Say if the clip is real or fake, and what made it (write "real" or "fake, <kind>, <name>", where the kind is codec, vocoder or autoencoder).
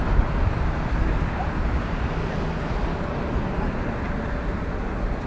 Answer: real